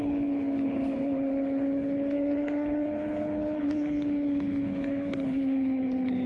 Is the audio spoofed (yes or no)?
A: yes